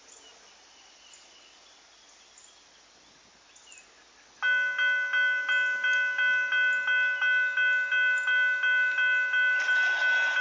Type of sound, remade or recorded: recorded